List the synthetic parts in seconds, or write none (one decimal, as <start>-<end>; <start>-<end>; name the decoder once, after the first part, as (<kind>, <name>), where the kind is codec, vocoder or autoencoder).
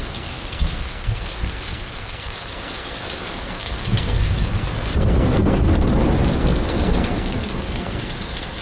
0.0-5.7 (codec, SNAC); 6.4-8.6